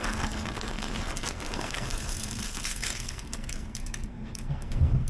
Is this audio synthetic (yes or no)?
yes